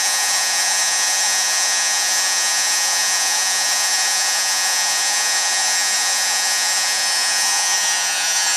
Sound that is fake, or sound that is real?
fake